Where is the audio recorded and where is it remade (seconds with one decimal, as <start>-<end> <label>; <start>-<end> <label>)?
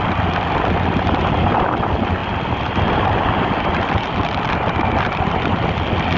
0.0-6.2 recorded